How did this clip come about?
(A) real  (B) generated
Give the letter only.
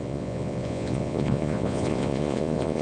B